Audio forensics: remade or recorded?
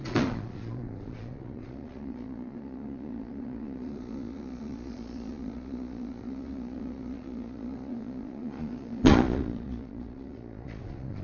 remade